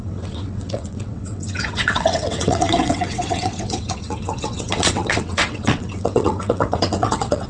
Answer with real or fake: fake